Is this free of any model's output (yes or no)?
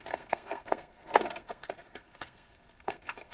no